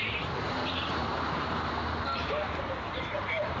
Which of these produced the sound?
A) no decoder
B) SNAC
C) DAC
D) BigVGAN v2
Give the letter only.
D